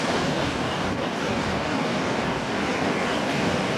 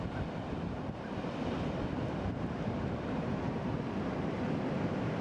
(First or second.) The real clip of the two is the second